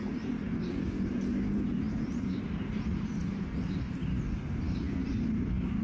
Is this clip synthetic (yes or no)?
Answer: no